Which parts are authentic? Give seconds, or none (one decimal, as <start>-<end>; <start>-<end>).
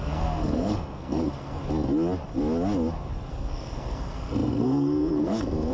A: 1.6-3.3